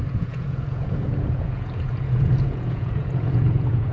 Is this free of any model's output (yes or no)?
no